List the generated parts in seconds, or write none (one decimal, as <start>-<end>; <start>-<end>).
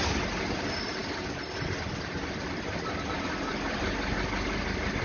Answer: none